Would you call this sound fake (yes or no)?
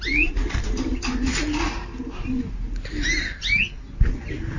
no